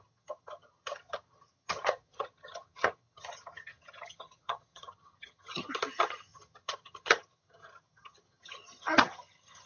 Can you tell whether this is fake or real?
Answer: fake